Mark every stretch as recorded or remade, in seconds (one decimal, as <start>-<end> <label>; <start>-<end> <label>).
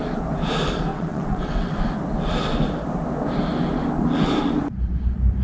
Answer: 0.0-0.9 recorded; 0.9-1.7 remade; 1.7-5.4 recorded